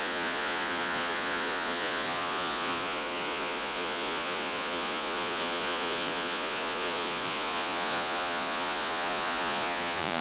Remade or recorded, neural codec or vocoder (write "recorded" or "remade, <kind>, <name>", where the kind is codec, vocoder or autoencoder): remade, vocoder, Vocos